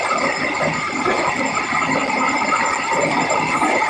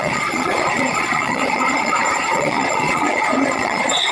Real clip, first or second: first